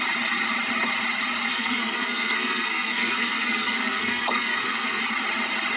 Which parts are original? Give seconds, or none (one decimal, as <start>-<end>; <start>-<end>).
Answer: 0.0-1.5; 5.0-5.8